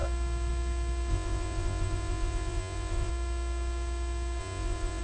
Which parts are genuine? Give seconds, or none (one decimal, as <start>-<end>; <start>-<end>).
0.0-1.1; 3.1-4.4